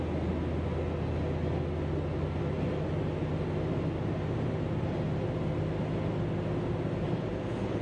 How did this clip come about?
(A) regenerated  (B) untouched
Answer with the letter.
B